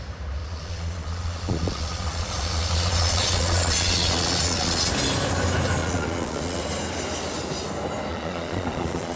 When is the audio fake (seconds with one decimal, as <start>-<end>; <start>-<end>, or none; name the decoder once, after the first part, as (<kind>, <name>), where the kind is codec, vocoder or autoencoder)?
0.4-4.9 (vocoder, Vocos); 5.8-6.6; 8.1-9.2